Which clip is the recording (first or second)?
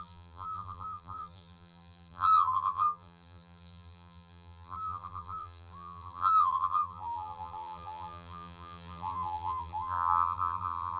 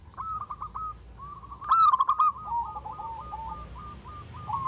second